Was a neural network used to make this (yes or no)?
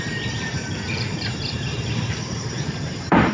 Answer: yes